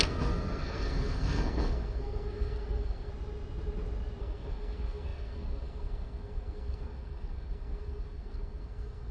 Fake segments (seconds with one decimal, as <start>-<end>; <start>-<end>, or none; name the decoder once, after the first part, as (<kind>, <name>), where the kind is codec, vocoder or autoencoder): 0.0-3.1 (codec, SNAC); 4.2-9.1